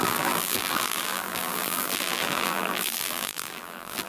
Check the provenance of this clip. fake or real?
fake